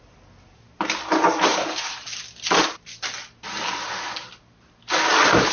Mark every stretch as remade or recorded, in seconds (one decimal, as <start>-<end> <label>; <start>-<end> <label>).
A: 0.0-5.5 recorded